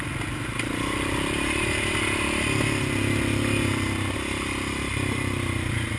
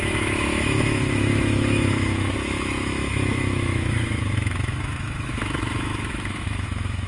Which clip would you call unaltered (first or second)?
first